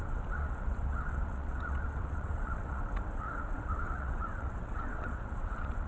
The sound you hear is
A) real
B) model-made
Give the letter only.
B